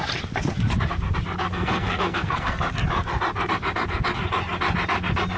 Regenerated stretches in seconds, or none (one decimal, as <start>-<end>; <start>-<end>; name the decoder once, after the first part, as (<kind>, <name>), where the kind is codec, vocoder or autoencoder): 1.4-2.6 (codec, SNAC)